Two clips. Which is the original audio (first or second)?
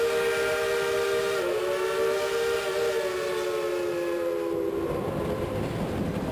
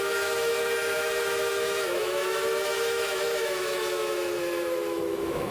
first